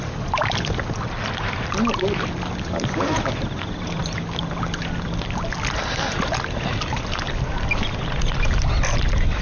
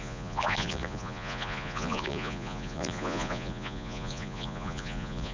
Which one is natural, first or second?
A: first